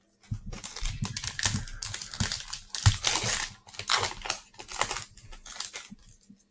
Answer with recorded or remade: recorded